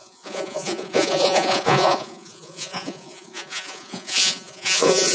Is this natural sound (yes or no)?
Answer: no